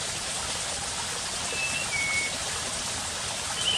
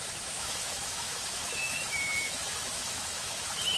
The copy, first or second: second